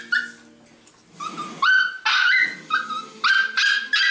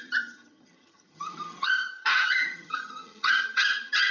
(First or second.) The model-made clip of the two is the second